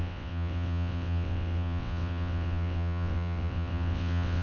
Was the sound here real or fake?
fake